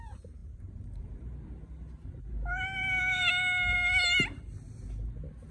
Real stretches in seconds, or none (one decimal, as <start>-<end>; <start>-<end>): 0.0-0.4; 3.3-5.5